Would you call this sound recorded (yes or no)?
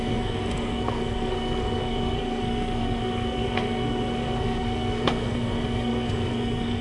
no